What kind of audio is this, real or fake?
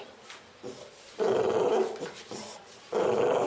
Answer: real